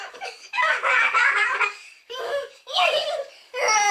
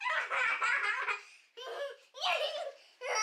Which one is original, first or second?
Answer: second